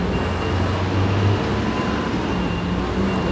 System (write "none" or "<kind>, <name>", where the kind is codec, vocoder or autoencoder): none